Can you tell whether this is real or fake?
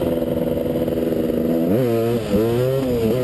real